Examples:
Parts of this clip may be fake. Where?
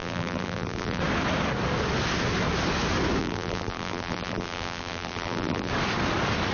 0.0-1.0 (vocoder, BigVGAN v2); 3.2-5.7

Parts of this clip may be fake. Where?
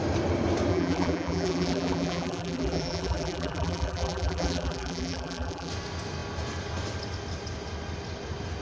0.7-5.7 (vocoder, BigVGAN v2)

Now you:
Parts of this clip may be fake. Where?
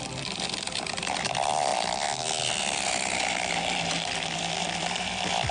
0.0-5.5 (vocoder, BigVGAN v2)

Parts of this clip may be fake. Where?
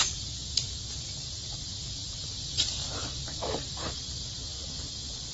2.0-3.9 (vocoder, BigVGAN v2)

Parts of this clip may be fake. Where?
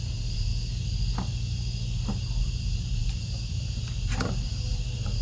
0.0-0.5 (vocoder, BigVGAN v2); 2.4-5.2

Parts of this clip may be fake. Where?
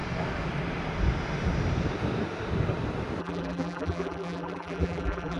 3.2-5.4 (vocoder, BigVGAN v2)